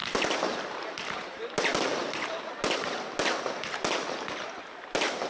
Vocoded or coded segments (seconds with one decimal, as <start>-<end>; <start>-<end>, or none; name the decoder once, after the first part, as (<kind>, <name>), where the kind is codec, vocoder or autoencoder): none